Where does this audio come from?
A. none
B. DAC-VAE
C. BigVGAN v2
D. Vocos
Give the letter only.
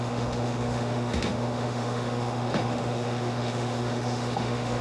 B